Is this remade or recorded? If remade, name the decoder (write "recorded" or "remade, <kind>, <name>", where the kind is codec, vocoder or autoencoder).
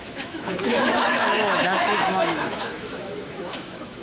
remade, autoencoder, DAC-VAE